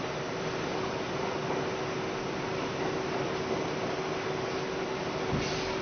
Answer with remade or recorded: recorded